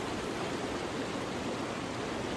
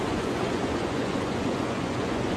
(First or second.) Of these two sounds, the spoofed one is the second